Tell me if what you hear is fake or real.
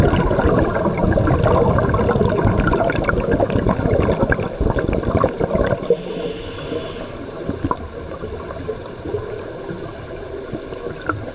real